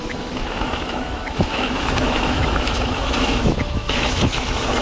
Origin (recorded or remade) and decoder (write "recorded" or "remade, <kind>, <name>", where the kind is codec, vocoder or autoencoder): remade, autoencoder, DAC-VAE